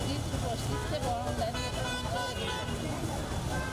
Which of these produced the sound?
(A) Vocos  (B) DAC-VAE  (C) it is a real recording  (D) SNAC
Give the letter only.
C